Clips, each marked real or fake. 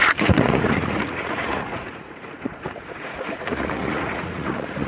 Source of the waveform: fake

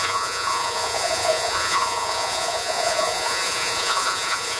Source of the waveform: fake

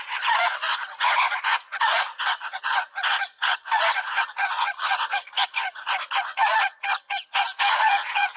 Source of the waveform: fake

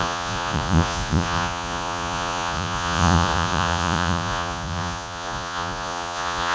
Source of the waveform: fake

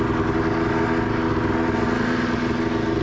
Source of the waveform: real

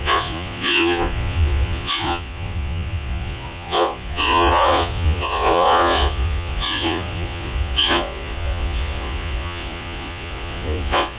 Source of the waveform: fake